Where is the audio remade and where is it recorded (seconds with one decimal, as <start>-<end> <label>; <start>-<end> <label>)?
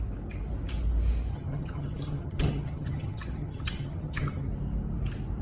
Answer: 0.0-1.3 recorded; 1.3-4.5 remade; 4.5-5.4 recorded